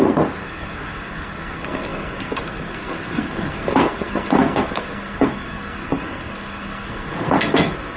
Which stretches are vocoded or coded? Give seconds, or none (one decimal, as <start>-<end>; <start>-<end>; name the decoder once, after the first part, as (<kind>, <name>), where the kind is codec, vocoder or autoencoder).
0.0-8.0 (codec, SNAC)